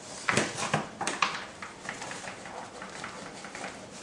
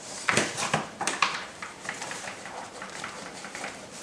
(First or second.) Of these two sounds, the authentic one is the first